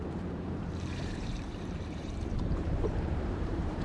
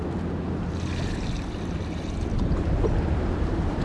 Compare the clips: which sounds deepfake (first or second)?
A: first